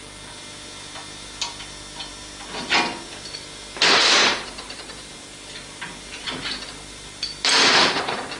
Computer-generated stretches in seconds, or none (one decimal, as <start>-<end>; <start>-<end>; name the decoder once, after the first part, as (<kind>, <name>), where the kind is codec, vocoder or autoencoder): none

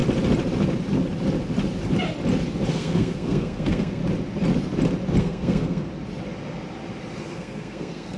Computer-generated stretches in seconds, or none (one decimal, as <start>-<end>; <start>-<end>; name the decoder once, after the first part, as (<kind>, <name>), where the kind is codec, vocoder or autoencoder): 2.7-4.0 (codec, SNAC); 5.2-5.9; 7.2-8.2

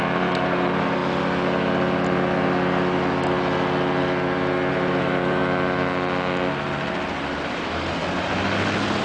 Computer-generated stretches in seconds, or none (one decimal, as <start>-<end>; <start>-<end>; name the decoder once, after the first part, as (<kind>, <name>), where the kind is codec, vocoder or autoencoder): 0.0-1.0 (vocoder, BigVGAN v2); 4.7-5.4; 7.5-8.0

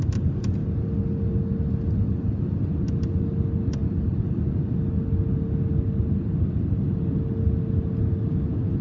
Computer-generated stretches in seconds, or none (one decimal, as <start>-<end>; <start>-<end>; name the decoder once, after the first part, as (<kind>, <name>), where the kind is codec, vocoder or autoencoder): none

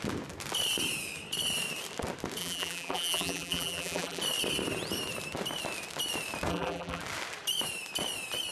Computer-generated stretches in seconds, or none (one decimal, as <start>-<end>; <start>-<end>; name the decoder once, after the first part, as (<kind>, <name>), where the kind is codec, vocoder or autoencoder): 2.4-4.2 (vocoder, BigVGAN v2); 6.5-7.0

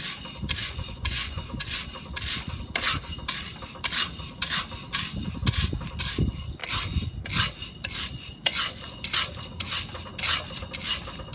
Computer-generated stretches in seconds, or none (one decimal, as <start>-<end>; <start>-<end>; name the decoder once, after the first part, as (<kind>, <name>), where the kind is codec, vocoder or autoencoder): 0.6-1.8 (vocoder, Vocos); 8.5-9.1